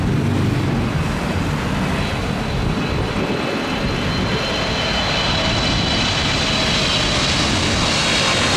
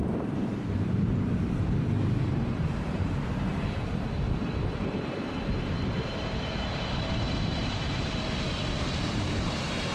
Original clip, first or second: first